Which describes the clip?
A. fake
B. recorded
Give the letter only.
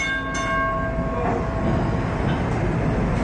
B